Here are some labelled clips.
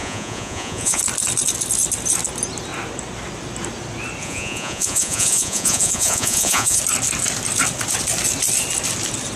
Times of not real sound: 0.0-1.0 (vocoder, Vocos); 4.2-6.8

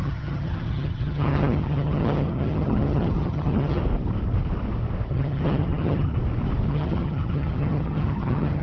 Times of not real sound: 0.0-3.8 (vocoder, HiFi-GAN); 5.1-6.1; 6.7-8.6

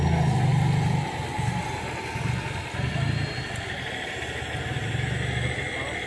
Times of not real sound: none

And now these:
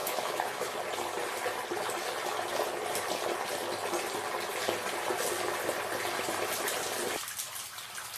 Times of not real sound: 0.0-0.8 (autoencoder, DAC-VAE)

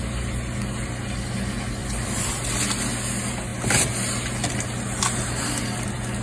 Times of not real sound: 1.8-2.5 (vocoder, BigVGAN v2)

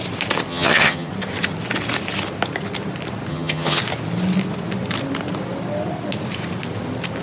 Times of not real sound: 0.5-1.1 (vocoder, HiFi-GAN); 3.3-3.8

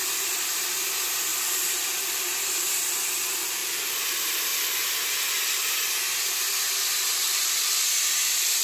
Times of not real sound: 0.0-0.7 (vocoder, BigVGAN v2); 1.3-2.7; 3.6-4.7; 7.1-7.7